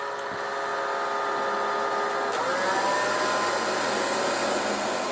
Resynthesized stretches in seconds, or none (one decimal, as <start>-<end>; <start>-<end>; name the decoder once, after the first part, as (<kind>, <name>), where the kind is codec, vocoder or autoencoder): none